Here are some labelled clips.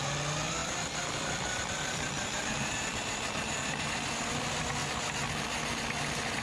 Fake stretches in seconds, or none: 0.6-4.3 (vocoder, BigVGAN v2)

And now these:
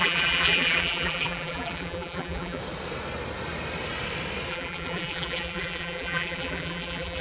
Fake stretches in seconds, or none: 0.0-2.6 (vocoder, BigVGAN v2); 4.5-7.2